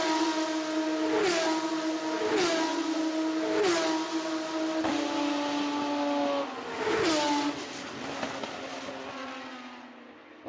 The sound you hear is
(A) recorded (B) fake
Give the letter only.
A